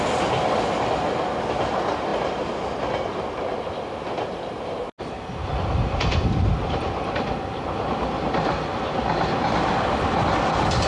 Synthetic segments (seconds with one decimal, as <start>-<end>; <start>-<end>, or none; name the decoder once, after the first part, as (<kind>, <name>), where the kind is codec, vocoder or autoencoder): none